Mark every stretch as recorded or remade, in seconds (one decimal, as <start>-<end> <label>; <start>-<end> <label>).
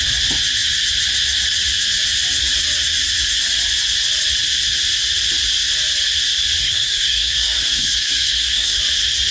0.0-6.6 recorded; 6.6-8.8 remade; 8.8-9.3 recorded